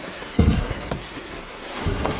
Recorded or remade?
remade